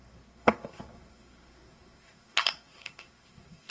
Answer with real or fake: fake